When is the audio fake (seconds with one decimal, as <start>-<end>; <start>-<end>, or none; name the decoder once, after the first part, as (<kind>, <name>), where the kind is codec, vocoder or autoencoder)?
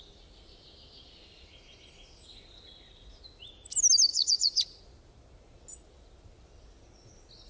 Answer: 4.1-4.8 (vocoder, Vocos)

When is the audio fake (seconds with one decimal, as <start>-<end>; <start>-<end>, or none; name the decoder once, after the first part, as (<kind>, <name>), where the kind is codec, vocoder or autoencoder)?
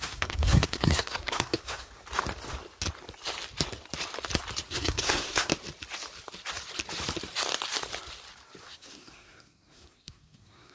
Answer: 0.0-1.9 (codec, SNAC); 4.7-5.5; 8.6-10.7